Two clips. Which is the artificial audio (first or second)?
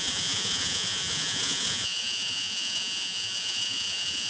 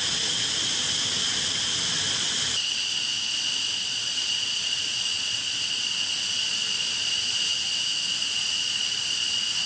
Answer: first